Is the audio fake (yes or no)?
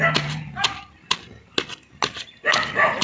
no